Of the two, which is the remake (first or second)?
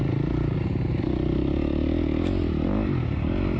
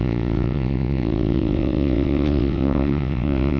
second